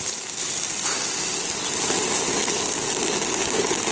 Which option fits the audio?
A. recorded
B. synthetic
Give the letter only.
A